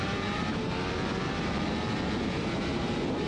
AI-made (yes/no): yes